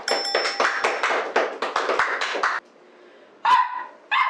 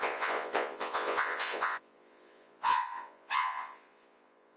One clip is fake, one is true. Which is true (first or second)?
first